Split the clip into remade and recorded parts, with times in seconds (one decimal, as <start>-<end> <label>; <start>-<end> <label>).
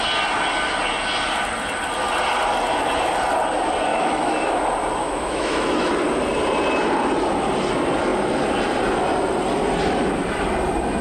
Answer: 0.0-3.9 recorded; 3.9-4.6 remade; 4.6-5.0 recorded; 5.0-5.9 remade; 5.9-11.0 recorded